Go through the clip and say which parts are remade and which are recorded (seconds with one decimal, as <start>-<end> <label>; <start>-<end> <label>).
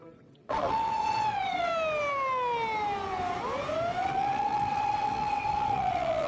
0.0-1.7 remade; 1.7-4.0 recorded; 4.0-6.3 remade